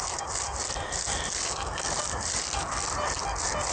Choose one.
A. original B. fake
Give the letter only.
A